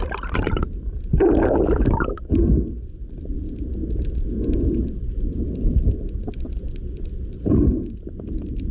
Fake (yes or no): yes